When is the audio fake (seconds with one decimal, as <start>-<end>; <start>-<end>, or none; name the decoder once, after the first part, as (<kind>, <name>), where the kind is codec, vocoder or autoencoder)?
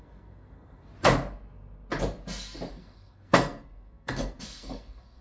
0.0-0.9 (codec, SNAC); 2.7-5.2